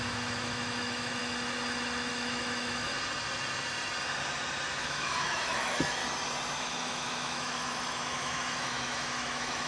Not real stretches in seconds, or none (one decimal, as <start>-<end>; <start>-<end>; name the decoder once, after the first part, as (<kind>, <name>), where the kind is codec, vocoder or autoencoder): 0.0-1.2 (autoencoder, DAC-VAE); 2.1-2.9; 4.7-6.0; 6.6-9.7